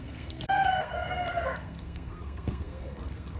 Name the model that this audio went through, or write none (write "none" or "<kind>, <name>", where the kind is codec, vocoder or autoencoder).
codec, SNAC